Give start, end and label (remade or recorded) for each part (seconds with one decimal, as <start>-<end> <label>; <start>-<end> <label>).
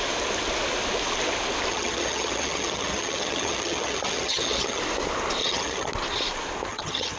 0.0-1.7 recorded; 1.7-4.8 remade; 4.8-5.4 recorded; 5.4-5.9 remade; 5.9-6.7 recorded; 6.7-7.2 remade